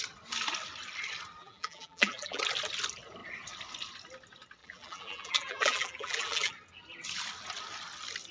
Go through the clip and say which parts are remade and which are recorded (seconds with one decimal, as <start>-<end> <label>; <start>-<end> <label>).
0.0-1.4 recorded; 1.4-2.4 remade; 2.4-4.6 recorded; 4.6-6.5 remade; 6.5-8.3 recorded